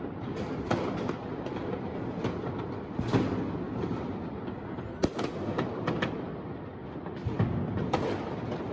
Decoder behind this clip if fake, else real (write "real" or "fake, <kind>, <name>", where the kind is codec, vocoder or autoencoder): real